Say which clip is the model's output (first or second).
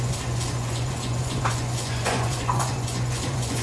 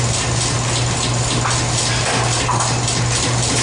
first